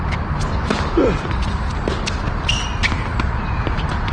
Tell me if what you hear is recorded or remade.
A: recorded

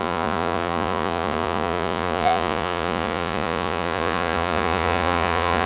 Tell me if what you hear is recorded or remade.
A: remade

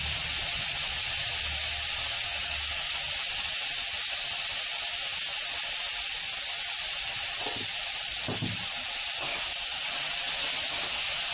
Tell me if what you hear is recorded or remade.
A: recorded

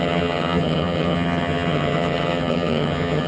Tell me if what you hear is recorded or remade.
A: remade